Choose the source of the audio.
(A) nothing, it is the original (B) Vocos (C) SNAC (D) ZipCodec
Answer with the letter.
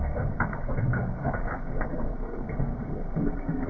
C